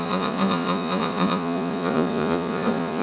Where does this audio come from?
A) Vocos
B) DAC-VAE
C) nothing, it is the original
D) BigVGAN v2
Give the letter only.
A